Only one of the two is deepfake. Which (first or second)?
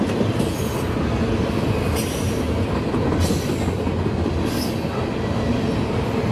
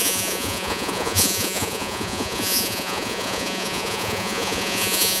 second